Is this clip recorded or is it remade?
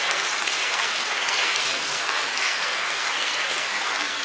remade